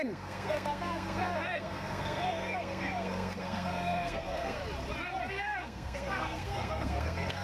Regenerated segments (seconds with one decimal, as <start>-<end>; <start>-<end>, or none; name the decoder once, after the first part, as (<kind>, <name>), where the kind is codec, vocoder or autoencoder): 0.0-4.6 (codec, SNAC); 5.3-7.4